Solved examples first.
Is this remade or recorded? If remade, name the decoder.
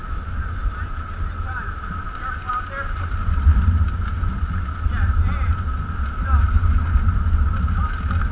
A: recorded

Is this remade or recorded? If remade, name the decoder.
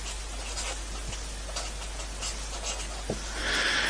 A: recorded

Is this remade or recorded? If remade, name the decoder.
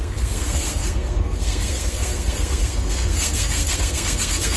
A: remade, codec, SNAC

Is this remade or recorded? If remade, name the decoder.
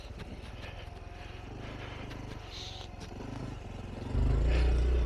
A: recorded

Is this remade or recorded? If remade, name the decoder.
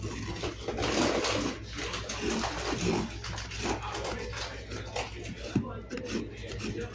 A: recorded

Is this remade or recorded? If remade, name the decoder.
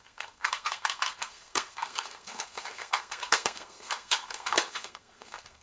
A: remade, codec, SNAC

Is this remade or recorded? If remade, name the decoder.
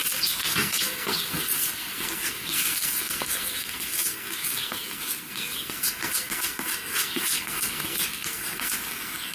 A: remade, codec, SNAC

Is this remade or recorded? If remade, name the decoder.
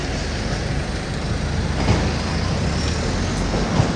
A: recorded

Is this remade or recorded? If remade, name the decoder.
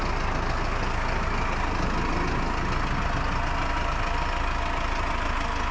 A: recorded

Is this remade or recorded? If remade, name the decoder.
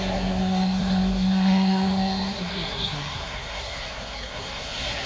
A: remade, codec, SNAC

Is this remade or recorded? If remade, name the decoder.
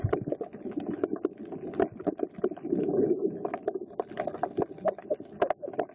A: recorded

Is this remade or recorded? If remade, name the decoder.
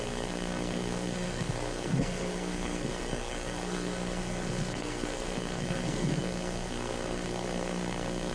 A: remade, codec, SNAC